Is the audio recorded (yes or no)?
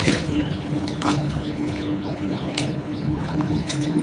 no